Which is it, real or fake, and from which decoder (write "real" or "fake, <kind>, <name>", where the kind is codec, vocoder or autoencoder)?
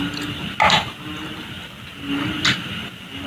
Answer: real